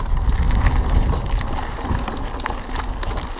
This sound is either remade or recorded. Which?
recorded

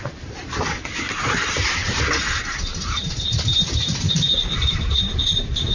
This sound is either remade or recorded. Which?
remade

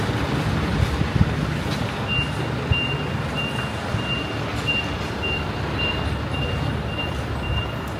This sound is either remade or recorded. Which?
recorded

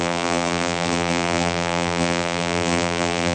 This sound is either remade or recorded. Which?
remade